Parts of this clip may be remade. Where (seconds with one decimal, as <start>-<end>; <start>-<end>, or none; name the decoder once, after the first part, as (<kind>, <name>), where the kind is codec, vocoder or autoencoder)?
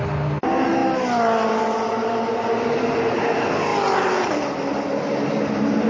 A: none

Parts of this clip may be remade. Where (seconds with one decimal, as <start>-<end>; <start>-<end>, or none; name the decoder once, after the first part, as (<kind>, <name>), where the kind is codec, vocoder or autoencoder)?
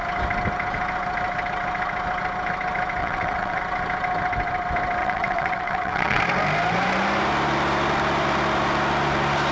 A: 3.0-3.6 (vocoder, WaveNeXt); 5.0-6.2